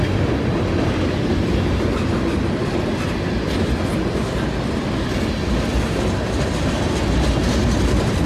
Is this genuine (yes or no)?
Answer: yes